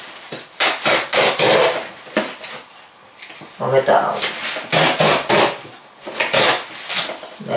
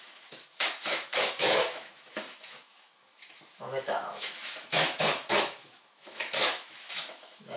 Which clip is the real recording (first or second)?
first